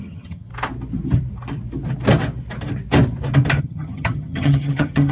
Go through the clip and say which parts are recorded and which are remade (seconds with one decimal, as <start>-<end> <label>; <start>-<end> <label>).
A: 0.0-0.5 remade; 0.5-3.6 recorded; 3.6-5.1 remade